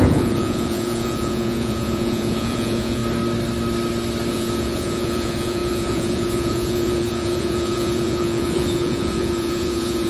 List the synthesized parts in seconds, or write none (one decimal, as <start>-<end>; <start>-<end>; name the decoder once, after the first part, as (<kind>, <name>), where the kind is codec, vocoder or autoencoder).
0.0-3.0 (vocoder, Vocos); 4.3-10.1

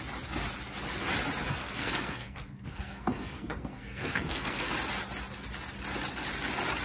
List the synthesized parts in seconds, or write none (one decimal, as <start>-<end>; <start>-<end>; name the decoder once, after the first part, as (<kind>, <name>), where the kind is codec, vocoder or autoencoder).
1.6-4.7 (codec, SNAC)